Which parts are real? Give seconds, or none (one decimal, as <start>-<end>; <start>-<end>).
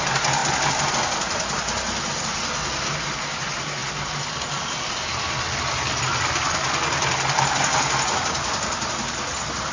0.0-9.7